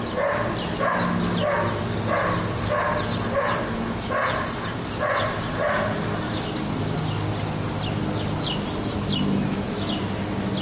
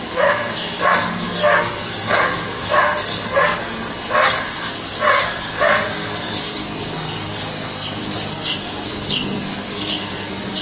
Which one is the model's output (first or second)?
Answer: second